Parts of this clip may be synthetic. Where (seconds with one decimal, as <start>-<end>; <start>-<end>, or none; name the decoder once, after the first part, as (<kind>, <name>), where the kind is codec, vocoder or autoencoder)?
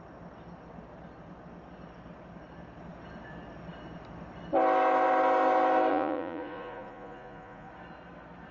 5.9-7.7 (vocoder, Vocos)